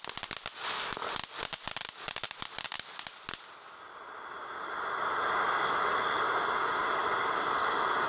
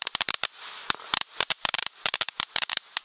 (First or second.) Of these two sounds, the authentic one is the first